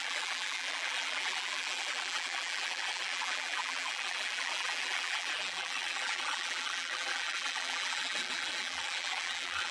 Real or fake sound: fake